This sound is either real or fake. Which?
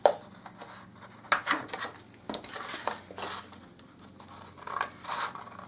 real